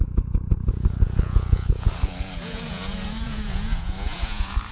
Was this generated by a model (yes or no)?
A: yes